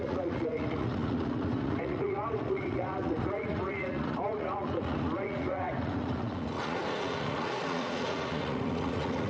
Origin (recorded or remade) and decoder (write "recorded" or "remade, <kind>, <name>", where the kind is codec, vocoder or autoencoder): remade, vocoder, Vocos